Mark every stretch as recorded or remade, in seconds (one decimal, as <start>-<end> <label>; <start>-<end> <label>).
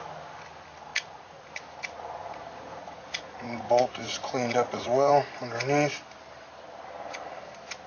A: 0.0-0.9 recorded; 0.9-1.5 remade; 1.5-2.2 recorded; 2.2-5.1 remade; 5.1-7.9 recorded